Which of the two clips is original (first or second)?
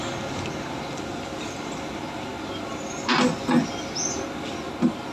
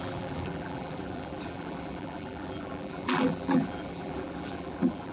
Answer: first